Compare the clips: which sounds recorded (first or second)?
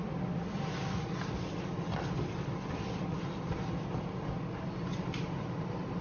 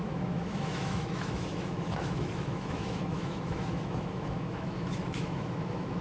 first